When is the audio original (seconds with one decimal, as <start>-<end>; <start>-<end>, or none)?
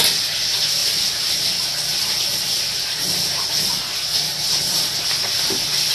0.0-5.9